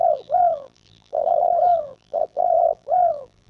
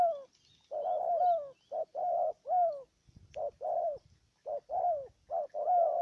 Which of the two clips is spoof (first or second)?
first